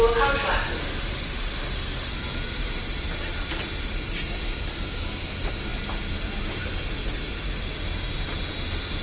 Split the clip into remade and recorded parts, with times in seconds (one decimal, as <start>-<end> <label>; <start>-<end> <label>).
0.0-0.8 recorded; 0.8-2.1 remade; 2.1-9.0 recorded